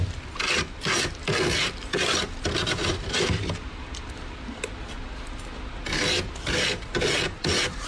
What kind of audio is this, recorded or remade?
remade